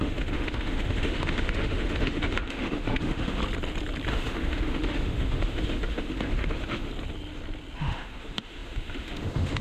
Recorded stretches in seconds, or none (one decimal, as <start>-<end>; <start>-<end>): 3.4-4.1; 6.9-7.8